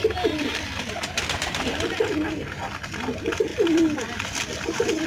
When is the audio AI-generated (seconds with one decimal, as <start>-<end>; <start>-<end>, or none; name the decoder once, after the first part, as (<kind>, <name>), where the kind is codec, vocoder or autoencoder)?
0.0-2.2 (vocoder, BigVGAN v2); 3.5-4.4